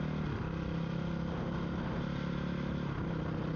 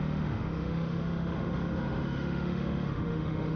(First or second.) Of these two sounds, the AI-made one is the second